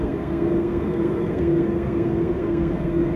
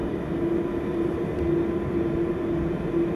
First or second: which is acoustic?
second